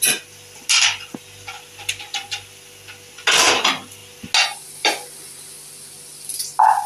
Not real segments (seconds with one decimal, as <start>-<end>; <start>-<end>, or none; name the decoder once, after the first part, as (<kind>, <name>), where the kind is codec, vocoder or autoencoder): none